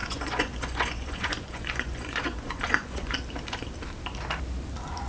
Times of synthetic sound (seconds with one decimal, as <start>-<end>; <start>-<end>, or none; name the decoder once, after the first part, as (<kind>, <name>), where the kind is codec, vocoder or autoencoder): 0.0-3.1 (vocoder, Vocos)